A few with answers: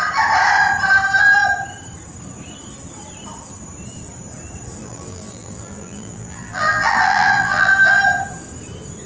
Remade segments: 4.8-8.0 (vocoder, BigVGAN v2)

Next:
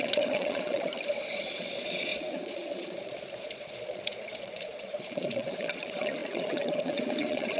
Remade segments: 0.0-0.9 (vocoder, Vocos); 1.6-7.6

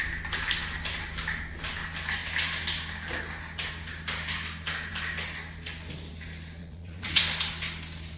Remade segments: 6.6-7.2 (vocoder, Vocos)

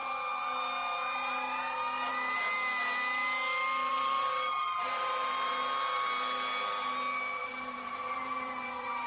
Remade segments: 3.9-5.5 (vocoder, BigVGAN v2); 7.4-9.1

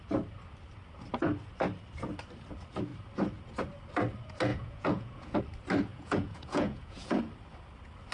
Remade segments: 4.5-5.4 (vocoder, Vocos); 5.9-7.2

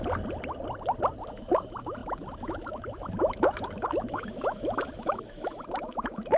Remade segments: 1.2-6.4 (autoencoder, DAC-VAE)